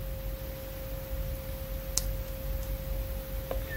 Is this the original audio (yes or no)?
yes